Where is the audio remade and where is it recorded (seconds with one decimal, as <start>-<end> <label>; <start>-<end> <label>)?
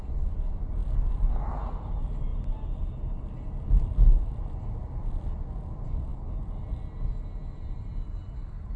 0.0-0.8 recorded; 0.8-1.3 remade; 1.3-8.8 recorded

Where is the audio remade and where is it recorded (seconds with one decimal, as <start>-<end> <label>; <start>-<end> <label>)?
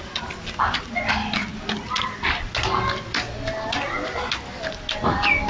0.0-5.5 recorded